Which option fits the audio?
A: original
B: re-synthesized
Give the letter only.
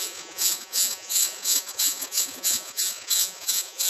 B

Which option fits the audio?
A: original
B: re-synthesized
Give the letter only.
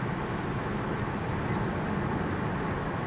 A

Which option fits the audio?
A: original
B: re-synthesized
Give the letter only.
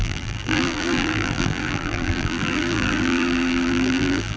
B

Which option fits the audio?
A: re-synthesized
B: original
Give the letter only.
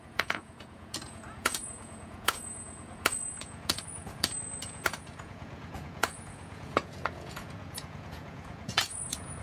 A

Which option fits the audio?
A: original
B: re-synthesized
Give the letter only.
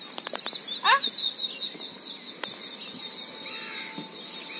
A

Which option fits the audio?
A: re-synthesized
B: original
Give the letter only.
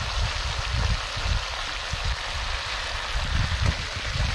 B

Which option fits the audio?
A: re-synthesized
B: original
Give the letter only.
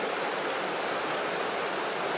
B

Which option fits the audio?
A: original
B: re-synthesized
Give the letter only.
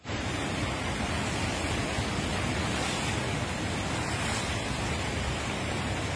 A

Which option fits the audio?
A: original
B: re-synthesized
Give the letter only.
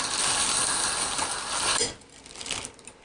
A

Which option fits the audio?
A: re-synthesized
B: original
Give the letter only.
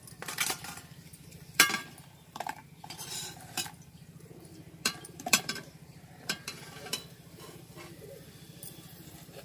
A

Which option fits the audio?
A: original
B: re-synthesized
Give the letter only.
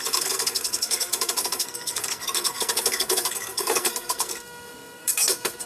B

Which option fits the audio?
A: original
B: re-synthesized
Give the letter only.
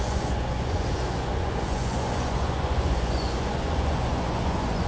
B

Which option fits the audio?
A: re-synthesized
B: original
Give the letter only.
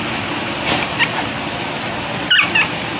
B